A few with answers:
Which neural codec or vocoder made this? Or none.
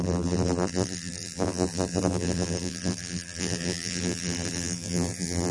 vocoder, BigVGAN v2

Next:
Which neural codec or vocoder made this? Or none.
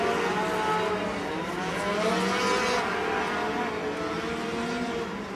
none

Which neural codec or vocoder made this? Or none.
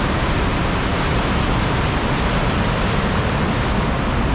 none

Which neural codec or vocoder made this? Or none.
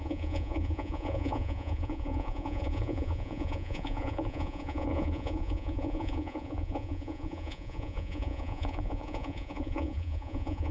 vocoder, Vocos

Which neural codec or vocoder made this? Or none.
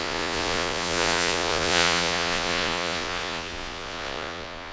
vocoder, Vocos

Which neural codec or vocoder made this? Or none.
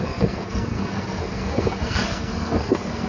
codec, SNAC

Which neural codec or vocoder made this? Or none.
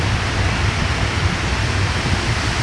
none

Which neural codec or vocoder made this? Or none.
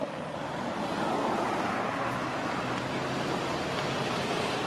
none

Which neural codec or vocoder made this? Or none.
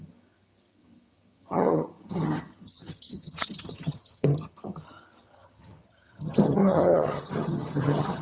vocoder, HiFi-GAN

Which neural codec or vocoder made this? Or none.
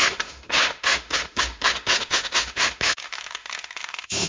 autoencoder, DAC-VAE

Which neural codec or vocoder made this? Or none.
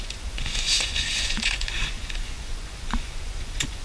vocoder, Vocos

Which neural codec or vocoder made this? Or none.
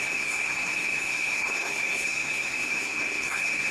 codec, SNAC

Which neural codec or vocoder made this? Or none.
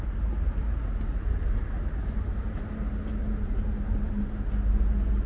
none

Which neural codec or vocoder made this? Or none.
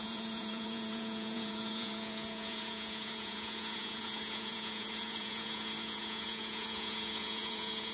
vocoder, Vocos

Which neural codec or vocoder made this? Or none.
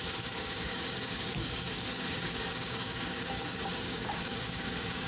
codec, DAC